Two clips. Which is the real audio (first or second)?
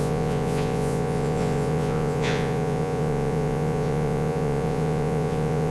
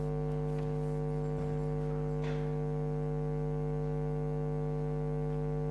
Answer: second